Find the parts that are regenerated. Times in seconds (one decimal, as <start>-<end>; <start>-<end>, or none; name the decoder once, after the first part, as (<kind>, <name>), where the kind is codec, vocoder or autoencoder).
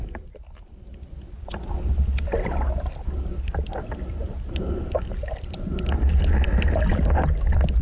none